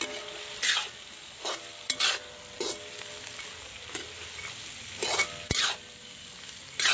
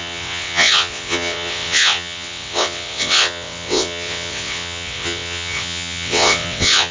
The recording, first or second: first